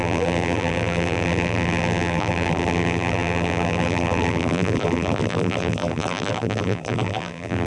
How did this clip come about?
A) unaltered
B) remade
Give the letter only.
B